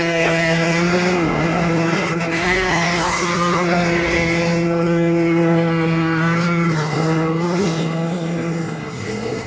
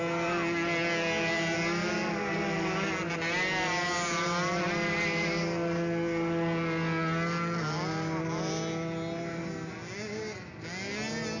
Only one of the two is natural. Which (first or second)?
second